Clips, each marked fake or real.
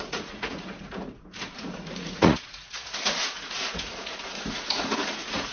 fake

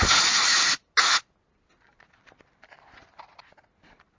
real